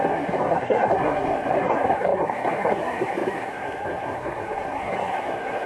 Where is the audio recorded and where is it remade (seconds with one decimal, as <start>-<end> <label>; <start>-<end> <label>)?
0.0-5.7 remade